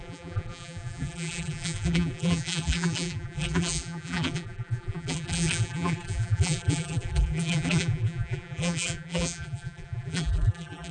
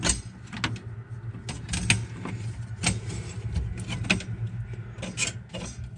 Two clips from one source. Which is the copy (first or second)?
first